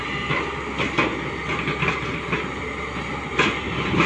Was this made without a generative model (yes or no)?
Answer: yes